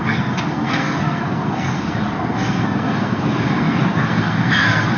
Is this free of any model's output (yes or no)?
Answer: no